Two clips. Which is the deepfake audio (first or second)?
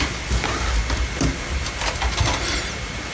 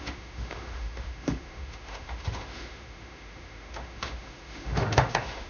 second